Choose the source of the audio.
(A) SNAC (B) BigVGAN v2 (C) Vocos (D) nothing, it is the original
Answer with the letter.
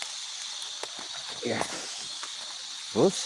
D